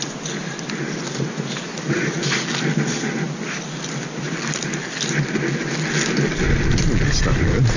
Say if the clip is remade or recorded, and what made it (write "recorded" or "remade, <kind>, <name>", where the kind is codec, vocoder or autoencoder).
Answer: recorded